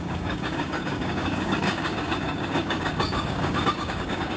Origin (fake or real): fake